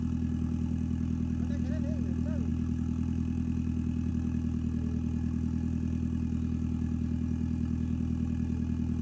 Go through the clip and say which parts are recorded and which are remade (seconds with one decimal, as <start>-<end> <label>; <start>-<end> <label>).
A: 0.0-9.0 recorded